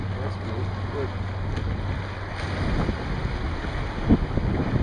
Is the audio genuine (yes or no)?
yes